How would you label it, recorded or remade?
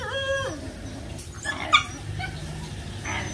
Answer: recorded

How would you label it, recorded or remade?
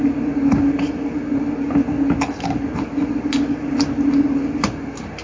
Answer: recorded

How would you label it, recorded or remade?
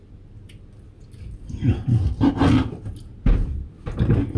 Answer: recorded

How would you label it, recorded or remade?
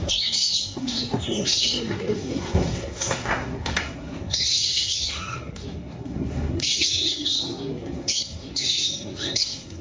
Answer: remade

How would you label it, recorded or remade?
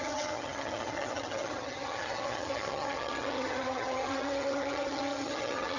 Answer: remade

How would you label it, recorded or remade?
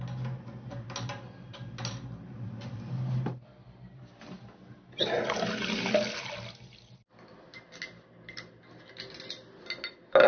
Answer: recorded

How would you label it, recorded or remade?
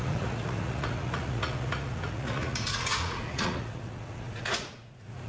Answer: remade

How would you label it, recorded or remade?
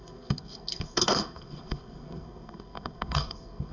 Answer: remade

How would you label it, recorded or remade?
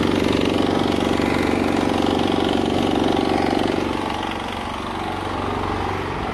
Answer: recorded